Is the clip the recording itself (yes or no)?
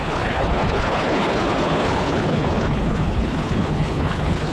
no